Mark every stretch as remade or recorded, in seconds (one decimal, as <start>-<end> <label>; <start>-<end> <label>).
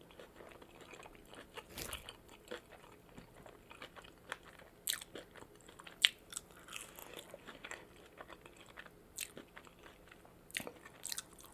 0.0-11.5 recorded